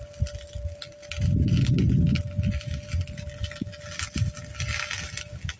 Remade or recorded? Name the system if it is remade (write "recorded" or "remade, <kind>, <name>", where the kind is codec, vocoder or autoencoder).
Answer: recorded